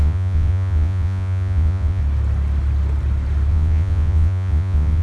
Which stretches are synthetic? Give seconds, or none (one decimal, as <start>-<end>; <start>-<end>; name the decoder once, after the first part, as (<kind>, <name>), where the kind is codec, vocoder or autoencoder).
0.0-2.0 (vocoder, Vocos); 3.5-5.0